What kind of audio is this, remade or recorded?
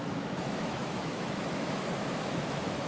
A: remade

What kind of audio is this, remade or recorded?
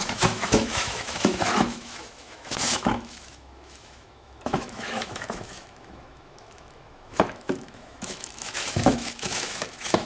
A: remade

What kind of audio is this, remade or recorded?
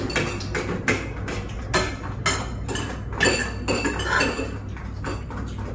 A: recorded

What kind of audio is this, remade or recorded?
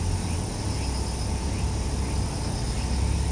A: recorded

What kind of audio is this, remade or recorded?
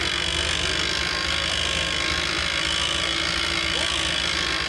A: recorded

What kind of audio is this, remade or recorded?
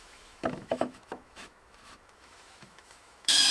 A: remade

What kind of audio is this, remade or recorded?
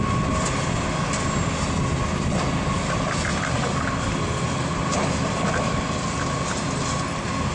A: recorded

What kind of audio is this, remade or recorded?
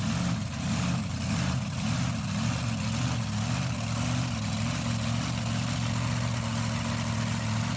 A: recorded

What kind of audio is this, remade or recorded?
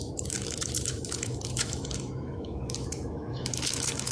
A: remade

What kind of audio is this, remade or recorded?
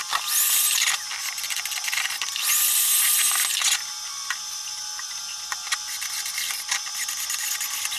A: recorded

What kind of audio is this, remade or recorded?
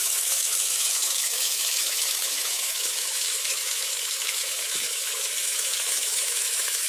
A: remade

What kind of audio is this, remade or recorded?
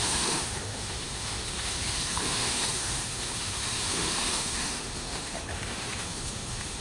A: remade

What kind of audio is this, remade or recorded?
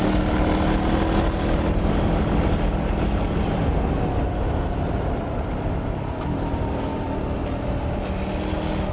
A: recorded